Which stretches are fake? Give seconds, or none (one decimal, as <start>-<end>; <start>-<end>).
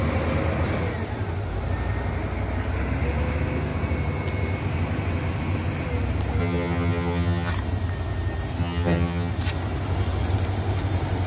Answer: 6.4-7.5; 8.6-9.3